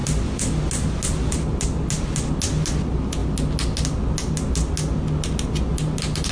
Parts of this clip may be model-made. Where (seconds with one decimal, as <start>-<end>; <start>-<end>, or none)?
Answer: none